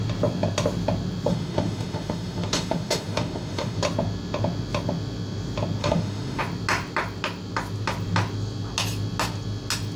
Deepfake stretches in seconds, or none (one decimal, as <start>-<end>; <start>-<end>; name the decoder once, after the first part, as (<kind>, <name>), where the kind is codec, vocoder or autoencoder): 1.3-3.8 (autoencoder, DAC-VAE); 5.8-6.4